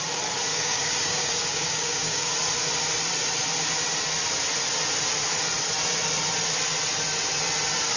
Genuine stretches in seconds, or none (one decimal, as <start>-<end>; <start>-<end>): 0.0-0.5; 2.3-8.0